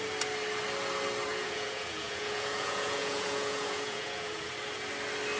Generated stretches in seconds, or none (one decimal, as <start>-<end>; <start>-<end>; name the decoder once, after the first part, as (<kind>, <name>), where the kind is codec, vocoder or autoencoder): 1.3-4.5 (vocoder, Vocos)